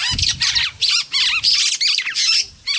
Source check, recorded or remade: recorded